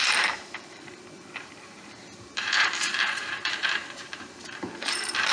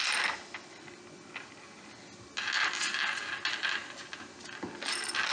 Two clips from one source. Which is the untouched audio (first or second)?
second